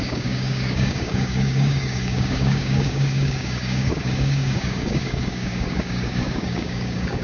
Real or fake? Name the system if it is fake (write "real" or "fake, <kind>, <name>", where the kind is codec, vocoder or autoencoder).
fake, codec, DAC